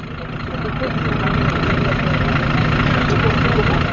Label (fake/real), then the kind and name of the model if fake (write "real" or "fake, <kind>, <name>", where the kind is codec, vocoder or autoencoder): real